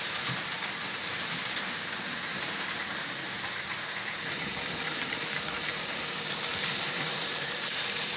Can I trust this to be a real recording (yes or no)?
no